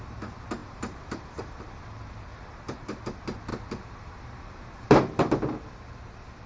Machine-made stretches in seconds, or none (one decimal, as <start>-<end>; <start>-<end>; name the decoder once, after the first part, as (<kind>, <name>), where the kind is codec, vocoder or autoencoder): 0.6-1.8 (vocoder, BigVGAN v2); 2.3-3.0; 3.5-5.3